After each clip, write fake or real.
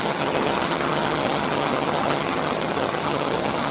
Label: fake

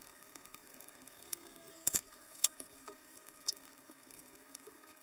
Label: fake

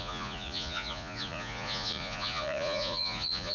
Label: fake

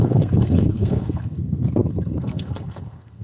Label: fake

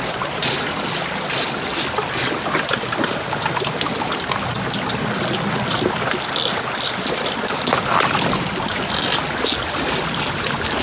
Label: real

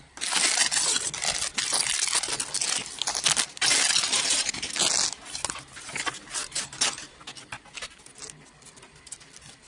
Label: real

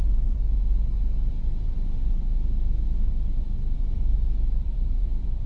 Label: fake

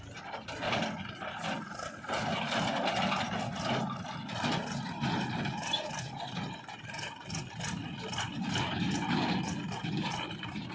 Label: real